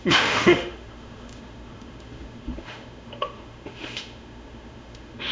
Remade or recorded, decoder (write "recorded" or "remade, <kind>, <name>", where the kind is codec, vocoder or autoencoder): remade, autoencoder, DAC-VAE